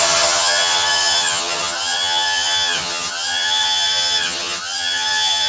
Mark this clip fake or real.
fake